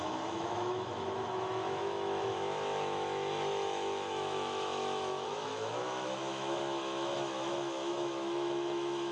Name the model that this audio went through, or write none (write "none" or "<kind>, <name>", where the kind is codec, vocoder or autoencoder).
autoencoder, DAC-VAE